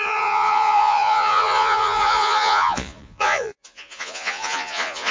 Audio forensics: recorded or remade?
remade